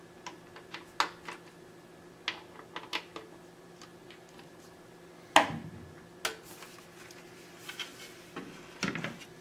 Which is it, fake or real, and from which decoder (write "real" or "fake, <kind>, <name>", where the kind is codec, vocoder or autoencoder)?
real